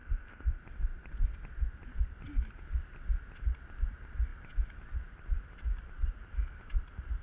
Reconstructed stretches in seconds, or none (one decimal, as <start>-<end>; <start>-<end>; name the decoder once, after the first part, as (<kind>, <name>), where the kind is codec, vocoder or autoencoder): 0.0-0.6 (codec, ZipCodec)